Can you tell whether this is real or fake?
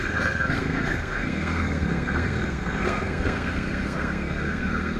fake